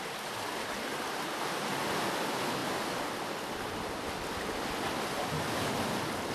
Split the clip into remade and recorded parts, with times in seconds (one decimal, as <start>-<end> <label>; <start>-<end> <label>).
0.0-6.3 recorded

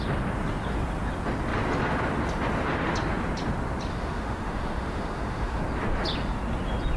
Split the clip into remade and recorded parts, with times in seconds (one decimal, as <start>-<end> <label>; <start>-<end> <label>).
0.0-3.9 recorded; 3.9-5.6 remade; 5.6-7.0 recorded

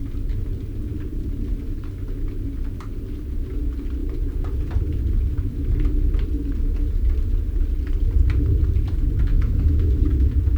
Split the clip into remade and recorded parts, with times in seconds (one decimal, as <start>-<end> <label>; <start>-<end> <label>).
0.0-9.3 recorded; 9.3-9.9 remade; 9.9-10.6 recorded